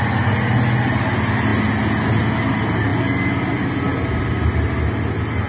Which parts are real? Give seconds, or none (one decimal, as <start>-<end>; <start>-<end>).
0.0-5.5